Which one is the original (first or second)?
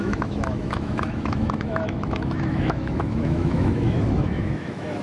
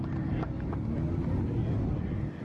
second